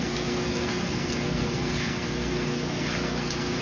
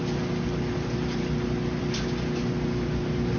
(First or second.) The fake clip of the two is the first